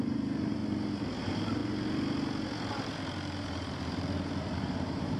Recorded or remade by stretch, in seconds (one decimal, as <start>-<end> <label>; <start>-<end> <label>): 0.0-0.6 remade; 0.6-1.2 recorded; 1.2-1.6 remade; 1.6-2.7 recorded; 2.7-5.2 remade